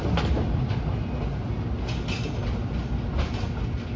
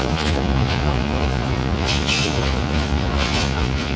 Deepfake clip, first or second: second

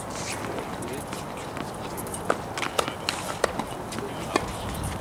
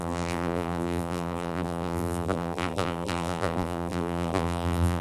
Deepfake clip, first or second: second